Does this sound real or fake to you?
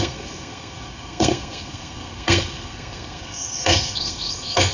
fake